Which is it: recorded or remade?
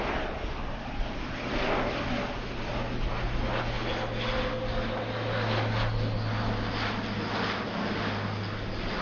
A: recorded